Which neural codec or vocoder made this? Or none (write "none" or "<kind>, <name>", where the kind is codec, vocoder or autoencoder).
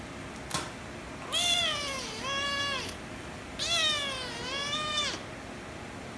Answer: none